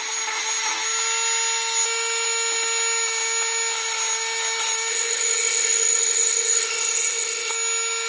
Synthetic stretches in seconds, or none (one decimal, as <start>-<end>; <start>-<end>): 4.9-7.5